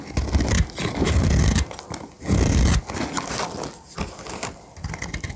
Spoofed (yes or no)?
no